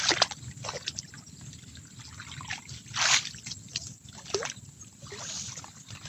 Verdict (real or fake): real